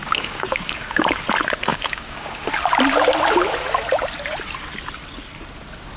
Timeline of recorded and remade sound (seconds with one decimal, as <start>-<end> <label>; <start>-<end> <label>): 0.0-1.2 remade; 1.2-1.7 recorded; 1.7-2.5 remade; 2.5-6.0 recorded